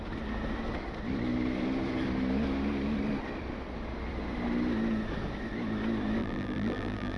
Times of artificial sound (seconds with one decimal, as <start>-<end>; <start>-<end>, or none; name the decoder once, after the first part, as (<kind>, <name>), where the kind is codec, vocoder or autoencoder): 6.2-7.2 (vocoder, BigVGAN v2)